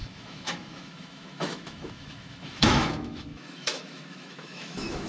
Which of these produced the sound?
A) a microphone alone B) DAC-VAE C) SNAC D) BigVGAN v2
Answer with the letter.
B